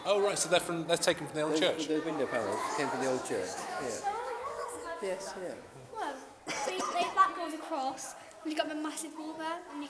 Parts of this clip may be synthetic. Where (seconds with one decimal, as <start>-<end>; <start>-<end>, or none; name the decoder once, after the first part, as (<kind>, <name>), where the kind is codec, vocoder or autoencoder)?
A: 2.1-6.4 (autoencoder, DAC-VAE)